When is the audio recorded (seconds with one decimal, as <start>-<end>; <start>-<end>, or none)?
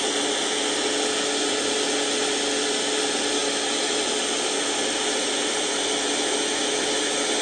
0.0-7.4